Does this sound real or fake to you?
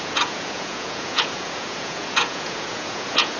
fake